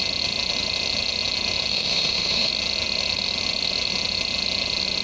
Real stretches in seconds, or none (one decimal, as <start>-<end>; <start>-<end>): 0.0-1.7; 2.5-5.0